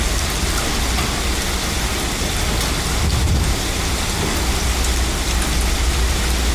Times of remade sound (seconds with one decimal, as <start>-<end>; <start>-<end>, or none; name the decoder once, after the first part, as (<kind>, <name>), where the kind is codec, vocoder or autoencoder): none